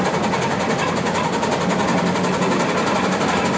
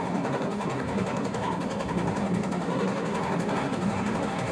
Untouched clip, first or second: first